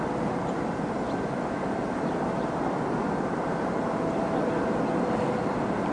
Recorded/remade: recorded